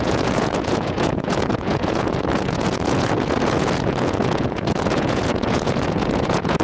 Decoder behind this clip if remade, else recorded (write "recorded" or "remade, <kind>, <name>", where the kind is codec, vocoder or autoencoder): remade, vocoder, Vocos